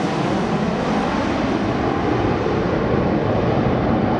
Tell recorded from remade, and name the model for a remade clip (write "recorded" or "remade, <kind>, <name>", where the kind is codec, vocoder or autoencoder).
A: recorded